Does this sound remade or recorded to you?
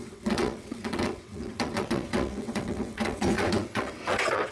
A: remade